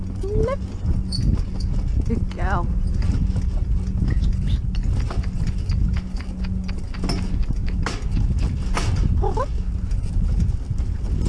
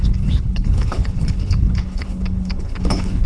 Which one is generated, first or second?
second